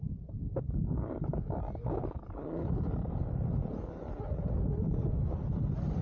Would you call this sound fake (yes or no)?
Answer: yes